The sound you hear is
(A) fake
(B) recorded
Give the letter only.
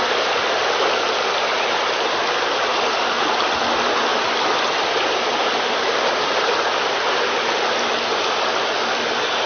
B